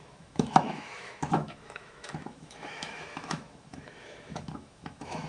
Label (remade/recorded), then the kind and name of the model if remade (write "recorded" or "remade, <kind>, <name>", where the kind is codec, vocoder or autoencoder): remade, autoencoder, DAC-VAE